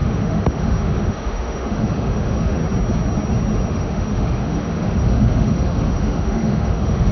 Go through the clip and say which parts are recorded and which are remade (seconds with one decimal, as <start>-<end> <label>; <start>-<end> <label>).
0.0-2.6 remade; 2.6-3.7 recorded; 3.7-7.1 remade